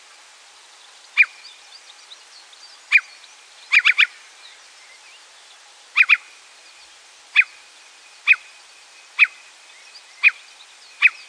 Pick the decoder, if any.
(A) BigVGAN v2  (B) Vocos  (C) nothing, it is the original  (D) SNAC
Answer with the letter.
C